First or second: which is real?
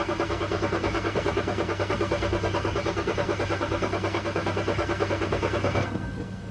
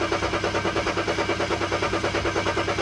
second